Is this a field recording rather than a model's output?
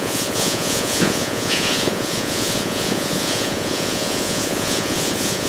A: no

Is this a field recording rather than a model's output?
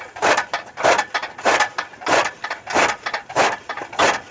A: yes